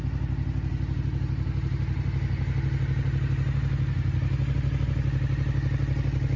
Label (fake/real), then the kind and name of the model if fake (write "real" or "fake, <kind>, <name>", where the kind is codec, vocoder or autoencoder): real